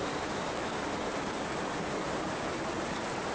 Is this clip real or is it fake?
real